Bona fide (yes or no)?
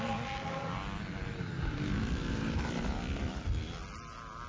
yes